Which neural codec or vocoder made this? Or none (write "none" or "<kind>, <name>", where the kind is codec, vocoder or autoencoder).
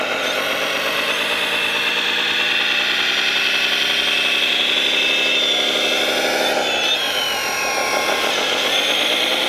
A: none